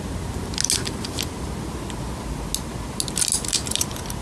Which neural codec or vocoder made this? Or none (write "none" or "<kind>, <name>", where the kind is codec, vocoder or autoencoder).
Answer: none